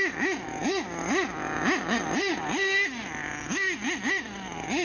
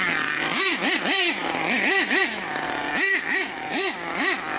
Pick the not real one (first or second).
second